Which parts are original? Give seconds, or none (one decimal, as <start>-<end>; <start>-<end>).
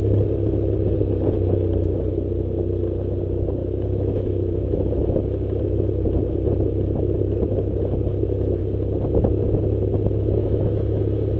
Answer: 0.0-3.6; 5.6-8.1; 8.6-10.4; 11.0-11.4